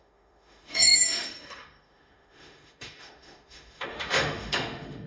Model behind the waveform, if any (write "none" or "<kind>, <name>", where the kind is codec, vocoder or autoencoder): autoencoder, DAC-VAE